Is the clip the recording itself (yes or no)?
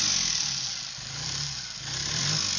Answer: yes